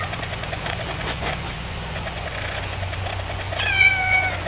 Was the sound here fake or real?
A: fake